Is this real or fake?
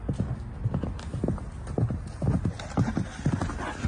real